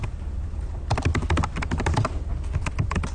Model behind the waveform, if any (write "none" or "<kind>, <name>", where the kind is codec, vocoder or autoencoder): none